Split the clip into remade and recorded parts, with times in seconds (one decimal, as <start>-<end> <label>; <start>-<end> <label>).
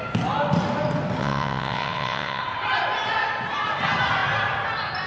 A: 0.0-1.2 recorded; 1.2-2.4 remade; 2.4-5.1 recorded